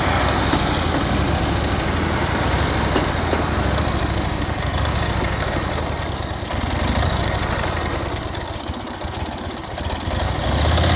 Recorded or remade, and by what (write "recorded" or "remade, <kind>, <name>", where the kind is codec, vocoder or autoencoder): recorded